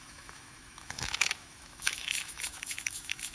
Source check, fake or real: fake